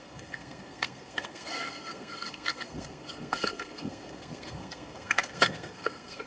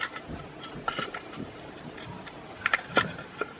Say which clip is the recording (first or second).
second